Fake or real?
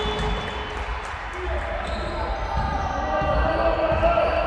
real